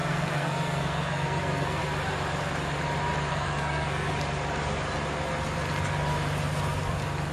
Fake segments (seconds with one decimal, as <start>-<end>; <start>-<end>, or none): 0.0-1.8; 3.3-4.1